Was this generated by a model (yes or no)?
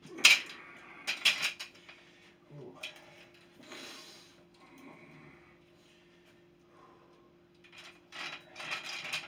no